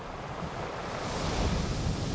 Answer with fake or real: real